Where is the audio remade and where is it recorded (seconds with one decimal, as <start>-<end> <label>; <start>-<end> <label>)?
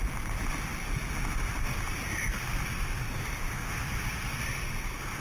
0.0-5.2 recorded